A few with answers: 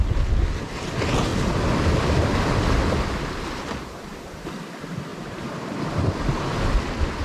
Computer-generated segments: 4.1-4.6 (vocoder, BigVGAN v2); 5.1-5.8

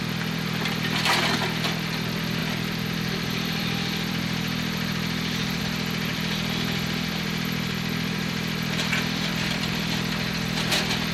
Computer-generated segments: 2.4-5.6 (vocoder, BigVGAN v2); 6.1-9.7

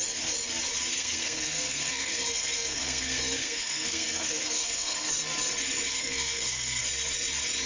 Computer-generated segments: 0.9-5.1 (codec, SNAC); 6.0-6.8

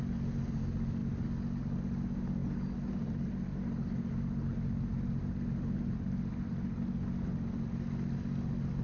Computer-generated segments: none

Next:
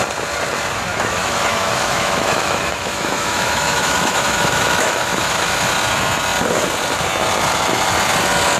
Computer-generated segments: 0.9-5.7 (autoencoder, DAC-VAE)